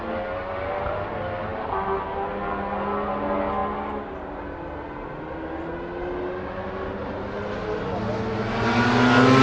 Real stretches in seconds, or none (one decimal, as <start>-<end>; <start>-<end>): 0.0-9.4